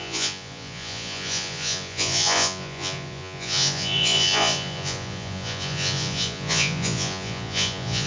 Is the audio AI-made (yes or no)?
yes